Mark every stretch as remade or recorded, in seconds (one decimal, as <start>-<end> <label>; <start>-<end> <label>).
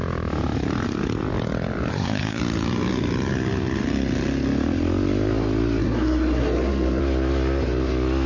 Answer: 0.0-1.9 recorded; 1.9-2.4 remade; 2.4-5.8 recorded; 5.8-7.0 remade; 7.0-8.3 recorded